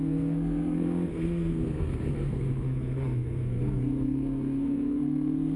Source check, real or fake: fake